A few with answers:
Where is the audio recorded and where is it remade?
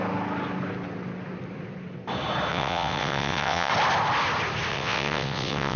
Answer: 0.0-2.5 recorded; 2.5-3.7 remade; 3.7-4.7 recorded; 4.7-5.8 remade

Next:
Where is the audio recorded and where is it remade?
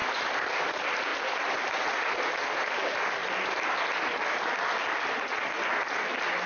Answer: 0.0-0.6 recorded; 0.6-1.1 remade; 1.1-2.6 recorded; 2.6-3.2 remade; 3.2-6.5 recorded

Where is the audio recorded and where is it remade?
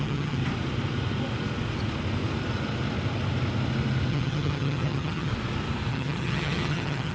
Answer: 0.0-0.4 remade; 0.4-4.1 recorded; 4.1-5.3 remade; 5.3-5.9 recorded; 5.9-7.1 remade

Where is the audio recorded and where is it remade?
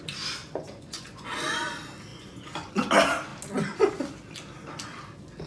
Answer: 0.0-0.4 recorded; 0.4-1.3 remade; 1.3-2.1 recorded; 2.1-2.7 remade; 2.7-5.5 recorded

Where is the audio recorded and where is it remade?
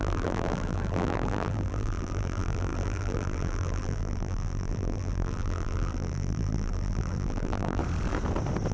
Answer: 0.0-7.8 remade; 7.8-8.7 recorded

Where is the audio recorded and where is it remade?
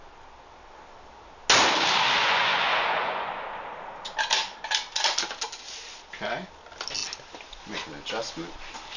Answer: 0.0-2.2 recorded; 2.2-3.3 remade; 3.3-9.0 recorded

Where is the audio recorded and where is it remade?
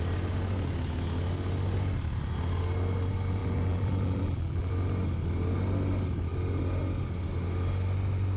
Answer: 0.0-3.4 recorded; 3.4-4.7 remade; 4.7-8.4 recorded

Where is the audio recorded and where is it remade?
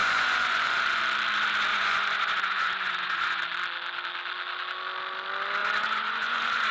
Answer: 0.0-1.0 remade; 1.0-1.7 recorded; 1.7-3.4 remade; 3.4-5.6 recorded; 5.6-6.7 remade